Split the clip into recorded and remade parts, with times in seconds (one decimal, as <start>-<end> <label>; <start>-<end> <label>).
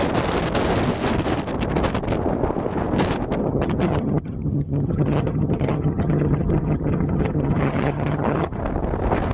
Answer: 0.0-3.4 recorded; 3.4-8.6 remade; 8.6-9.3 recorded